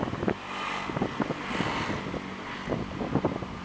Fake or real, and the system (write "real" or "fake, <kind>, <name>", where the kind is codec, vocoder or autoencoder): real